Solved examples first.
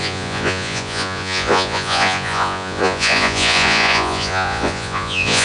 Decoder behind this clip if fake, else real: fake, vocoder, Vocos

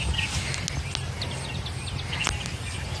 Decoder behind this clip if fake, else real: real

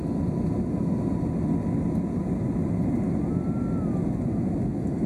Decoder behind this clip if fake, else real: real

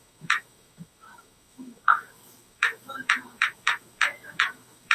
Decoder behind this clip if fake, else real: fake, autoencoder, DAC-VAE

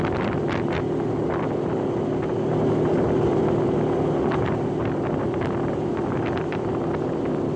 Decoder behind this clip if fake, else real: real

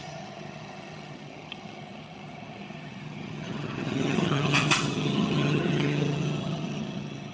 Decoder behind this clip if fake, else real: fake, vocoder, HiFi-GAN